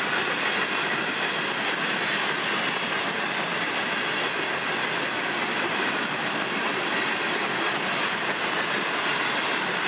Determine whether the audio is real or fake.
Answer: real